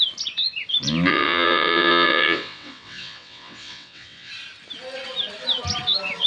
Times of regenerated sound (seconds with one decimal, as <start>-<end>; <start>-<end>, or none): 1.1-4.3